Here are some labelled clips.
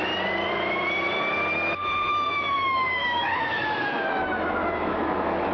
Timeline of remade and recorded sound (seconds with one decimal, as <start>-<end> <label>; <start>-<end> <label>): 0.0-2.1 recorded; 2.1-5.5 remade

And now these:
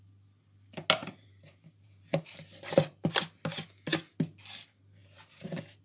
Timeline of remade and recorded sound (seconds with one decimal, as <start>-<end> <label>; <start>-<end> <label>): 0.0-1.0 recorded; 1.0-2.2 remade; 2.2-5.0 recorded; 5.0-5.8 remade

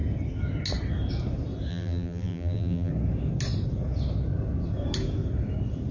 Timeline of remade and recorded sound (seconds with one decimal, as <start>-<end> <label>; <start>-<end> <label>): 0.0-1.7 recorded; 1.7-2.9 remade; 2.9-5.9 recorded

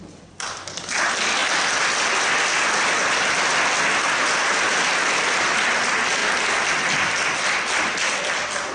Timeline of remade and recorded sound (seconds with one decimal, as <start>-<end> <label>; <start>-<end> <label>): 0.0-8.7 recorded

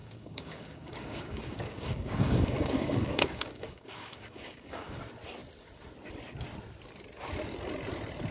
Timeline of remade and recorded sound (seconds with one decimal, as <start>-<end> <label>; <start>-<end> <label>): 0.0-5.0 remade; 5.0-8.3 recorded

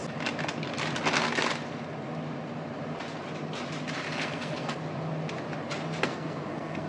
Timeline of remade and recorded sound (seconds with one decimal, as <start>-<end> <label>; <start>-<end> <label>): 0.0-4.1 recorded; 4.1-4.8 remade; 4.8-6.0 recorded; 6.0-6.9 remade

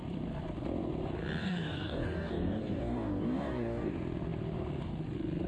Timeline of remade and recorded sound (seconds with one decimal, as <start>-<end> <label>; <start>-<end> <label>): 0.0-1.4 recorded; 1.4-3.9 remade; 3.9-5.5 recorded

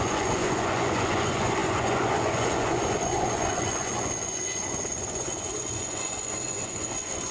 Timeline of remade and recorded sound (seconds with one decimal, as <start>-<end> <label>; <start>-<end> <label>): 0.0-7.3 remade